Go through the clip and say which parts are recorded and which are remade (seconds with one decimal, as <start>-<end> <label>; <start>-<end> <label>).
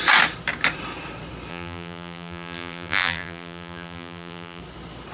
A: 0.0-1.5 recorded; 1.5-4.6 remade; 4.6-5.1 recorded